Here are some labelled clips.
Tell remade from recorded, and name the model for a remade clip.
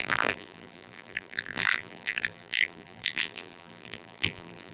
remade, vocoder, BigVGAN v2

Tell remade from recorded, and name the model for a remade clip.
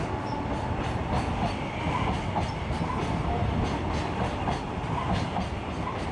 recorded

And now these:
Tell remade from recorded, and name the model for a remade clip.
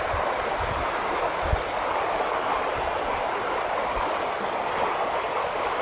recorded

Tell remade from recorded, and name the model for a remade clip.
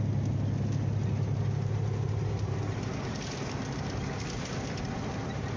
recorded